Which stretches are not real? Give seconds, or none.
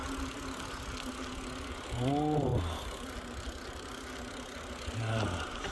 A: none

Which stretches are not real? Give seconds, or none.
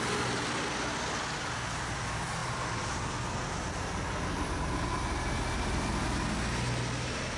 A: none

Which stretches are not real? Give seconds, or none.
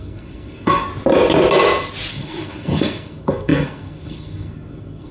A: 0.0-0.9 (codec, SNAC); 2.1-5.1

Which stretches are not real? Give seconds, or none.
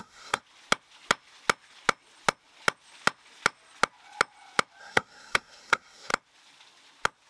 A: 0.0-0.4 (codec, SNAC); 4.8-6.1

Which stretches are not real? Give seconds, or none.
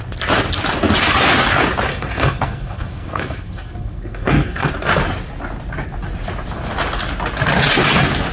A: 1.9-4.7 (codec, SNAC)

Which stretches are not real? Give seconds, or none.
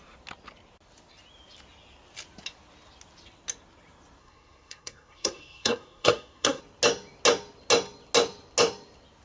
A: 4.2-6.6 (codec, SNAC)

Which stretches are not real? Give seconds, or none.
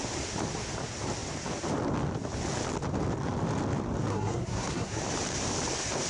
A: 4.1-5.0 (codec, SNAC)